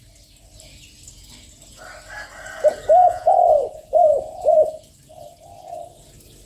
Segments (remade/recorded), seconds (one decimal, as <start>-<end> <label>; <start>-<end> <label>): 0.0-3.0 recorded; 3.0-4.8 remade; 4.8-6.5 recorded